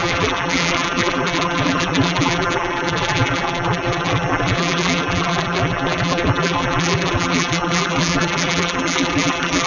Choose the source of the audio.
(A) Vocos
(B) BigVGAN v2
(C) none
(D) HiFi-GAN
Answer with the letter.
B